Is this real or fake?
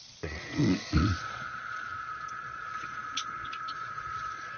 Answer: fake